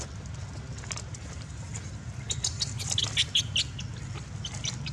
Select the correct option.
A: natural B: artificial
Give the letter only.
A